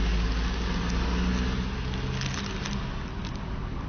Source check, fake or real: real